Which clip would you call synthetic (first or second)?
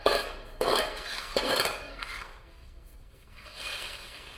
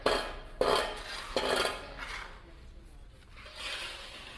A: first